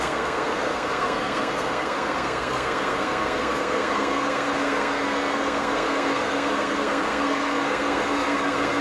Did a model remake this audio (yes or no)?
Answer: yes